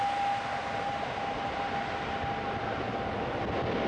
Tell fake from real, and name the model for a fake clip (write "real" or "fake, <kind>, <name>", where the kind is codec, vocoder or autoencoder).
real